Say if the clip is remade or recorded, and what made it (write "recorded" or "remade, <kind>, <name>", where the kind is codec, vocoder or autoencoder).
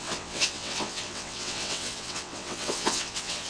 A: remade, vocoder, WaveNeXt